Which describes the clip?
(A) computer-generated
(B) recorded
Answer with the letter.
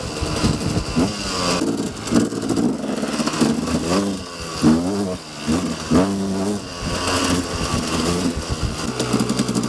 B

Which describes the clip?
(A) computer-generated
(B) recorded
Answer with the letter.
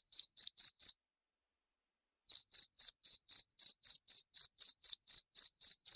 B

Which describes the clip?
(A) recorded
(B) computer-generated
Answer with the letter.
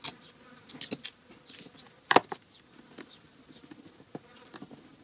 A